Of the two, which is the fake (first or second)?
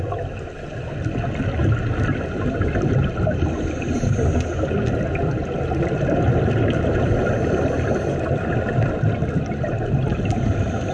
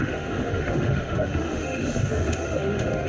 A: second